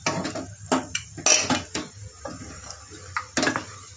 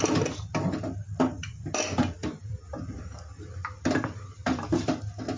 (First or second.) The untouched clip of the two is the first